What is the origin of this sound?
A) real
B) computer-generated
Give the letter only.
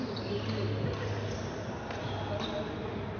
A